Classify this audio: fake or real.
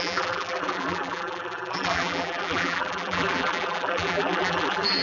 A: fake